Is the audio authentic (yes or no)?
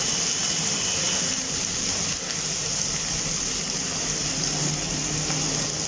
yes